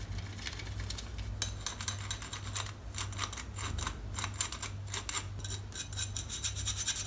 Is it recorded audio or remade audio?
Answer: recorded